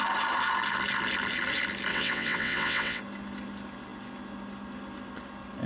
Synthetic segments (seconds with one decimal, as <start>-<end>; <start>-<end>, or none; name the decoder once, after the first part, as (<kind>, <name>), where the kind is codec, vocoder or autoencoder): 1.9-3.0 (vocoder, WaveNeXt)